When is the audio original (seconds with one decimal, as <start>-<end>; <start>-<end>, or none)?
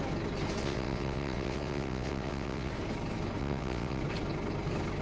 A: 0.0-0.6; 2.7-3.4; 4.0-5.0